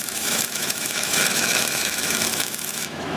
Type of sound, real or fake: fake